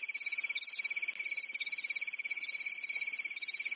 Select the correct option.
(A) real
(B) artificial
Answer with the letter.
A